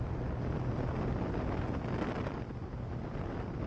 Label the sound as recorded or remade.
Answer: recorded